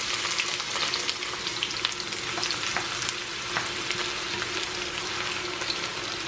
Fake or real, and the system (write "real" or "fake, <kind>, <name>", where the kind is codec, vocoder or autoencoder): real